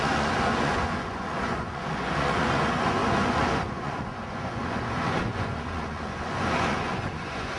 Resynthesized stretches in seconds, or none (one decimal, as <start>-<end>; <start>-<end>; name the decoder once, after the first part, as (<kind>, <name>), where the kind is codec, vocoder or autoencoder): 0.0-7.6 (vocoder, Vocos)

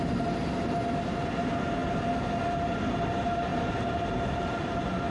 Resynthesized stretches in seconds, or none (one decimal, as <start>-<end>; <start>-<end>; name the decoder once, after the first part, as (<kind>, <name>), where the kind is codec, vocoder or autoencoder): none

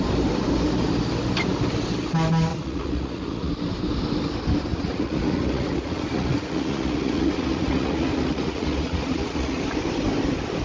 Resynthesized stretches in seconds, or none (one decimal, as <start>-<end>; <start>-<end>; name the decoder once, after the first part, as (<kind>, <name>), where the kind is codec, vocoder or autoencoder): 2.5-3.5 (vocoder, Vocos); 4.7-9.6

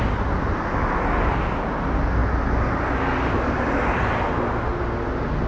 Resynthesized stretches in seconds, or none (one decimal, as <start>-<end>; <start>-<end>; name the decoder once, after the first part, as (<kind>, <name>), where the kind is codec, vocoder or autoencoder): none

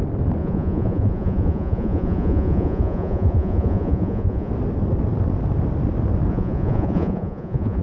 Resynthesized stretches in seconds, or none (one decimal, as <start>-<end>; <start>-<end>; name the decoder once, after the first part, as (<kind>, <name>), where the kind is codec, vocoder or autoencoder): 0.4-4.5 (vocoder, Vocos); 6.3-7.8

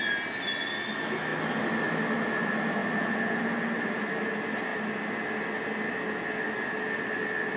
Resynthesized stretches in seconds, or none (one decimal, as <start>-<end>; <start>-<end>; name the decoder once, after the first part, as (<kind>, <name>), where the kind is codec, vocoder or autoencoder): none

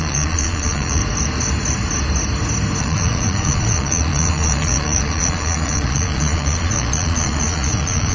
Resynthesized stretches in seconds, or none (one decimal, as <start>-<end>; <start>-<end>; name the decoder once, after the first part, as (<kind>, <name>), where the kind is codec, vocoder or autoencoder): 0.0-1.0 (vocoder, Vocos); 2.8-8.1

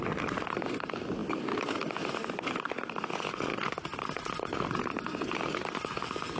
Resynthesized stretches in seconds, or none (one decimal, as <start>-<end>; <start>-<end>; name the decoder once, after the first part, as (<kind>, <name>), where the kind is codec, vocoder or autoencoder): none